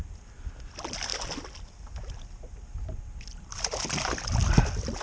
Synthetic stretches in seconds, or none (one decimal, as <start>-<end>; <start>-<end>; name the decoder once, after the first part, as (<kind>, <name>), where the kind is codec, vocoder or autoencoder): none